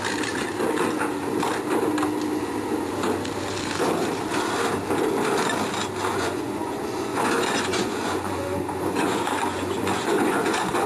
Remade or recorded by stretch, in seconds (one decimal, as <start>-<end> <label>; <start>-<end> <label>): 0.0-6.1 recorded; 6.1-10.9 remade